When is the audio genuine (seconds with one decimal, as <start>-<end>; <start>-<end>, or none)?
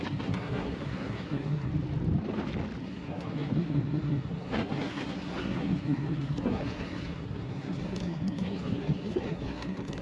1.7-2.8